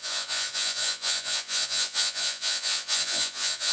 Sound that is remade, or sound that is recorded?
remade